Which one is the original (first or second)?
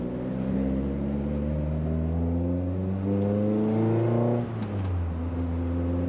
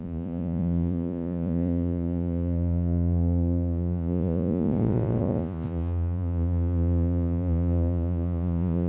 first